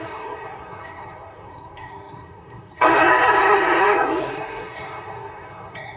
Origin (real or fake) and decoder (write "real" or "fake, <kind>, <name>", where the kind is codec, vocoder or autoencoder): fake, codec, SNAC